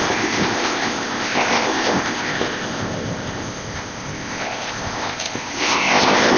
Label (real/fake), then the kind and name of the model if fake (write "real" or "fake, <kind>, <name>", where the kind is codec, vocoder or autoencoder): fake, codec, ZipCodec